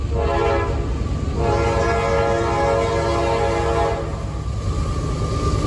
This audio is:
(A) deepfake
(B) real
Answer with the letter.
B